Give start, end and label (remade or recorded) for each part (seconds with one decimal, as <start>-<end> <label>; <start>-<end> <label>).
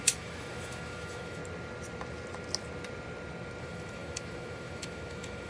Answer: 0.0-1.4 remade; 1.4-3.6 recorded; 3.6-5.5 remade